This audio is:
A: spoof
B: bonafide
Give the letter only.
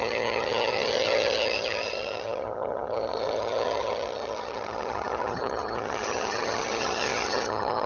A